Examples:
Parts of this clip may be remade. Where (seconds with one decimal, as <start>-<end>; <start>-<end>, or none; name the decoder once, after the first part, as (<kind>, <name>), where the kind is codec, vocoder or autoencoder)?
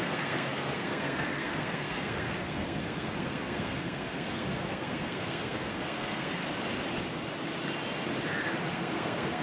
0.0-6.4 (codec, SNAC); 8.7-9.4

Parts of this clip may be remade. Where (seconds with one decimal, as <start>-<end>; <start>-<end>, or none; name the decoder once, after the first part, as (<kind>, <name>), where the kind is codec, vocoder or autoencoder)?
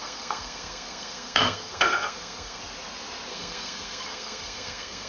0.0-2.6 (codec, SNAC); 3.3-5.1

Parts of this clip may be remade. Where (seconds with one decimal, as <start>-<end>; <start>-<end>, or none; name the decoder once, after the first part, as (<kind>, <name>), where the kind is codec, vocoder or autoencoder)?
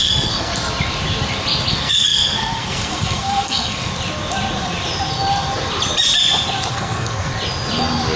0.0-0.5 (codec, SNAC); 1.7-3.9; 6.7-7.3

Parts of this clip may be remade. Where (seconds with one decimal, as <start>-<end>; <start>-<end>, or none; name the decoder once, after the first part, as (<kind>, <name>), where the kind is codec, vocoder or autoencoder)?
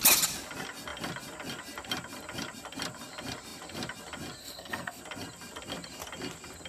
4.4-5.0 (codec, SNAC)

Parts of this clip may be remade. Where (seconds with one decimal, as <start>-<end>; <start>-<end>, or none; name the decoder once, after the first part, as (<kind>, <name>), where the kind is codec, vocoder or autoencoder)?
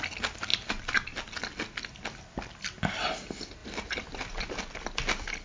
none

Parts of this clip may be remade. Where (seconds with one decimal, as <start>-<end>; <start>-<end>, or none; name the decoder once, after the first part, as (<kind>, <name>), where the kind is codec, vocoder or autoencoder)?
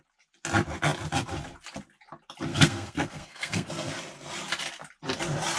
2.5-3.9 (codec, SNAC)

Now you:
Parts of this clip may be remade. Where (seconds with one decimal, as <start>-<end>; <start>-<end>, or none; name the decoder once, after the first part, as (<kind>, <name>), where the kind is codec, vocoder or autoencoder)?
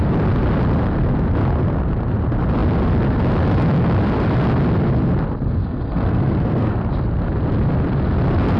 5.6-6.7 (codec, SNAC)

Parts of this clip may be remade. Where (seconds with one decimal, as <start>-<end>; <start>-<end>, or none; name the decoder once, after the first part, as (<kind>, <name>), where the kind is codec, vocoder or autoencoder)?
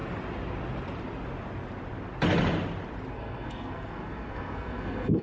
3.1-5.2 (codec, SNAC)